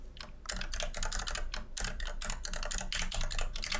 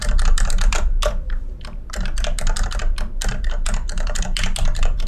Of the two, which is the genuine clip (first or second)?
first